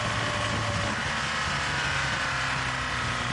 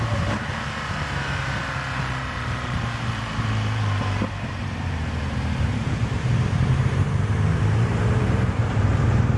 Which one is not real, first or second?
second